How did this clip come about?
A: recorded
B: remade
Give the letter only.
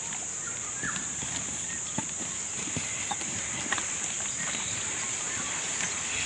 A